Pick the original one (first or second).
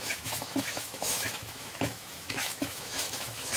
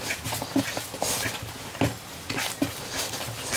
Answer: second